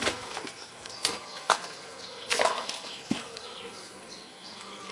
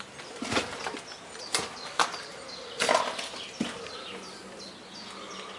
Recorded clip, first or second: second